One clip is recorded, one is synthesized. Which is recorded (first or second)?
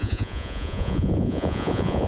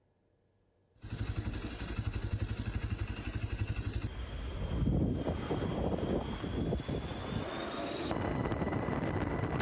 second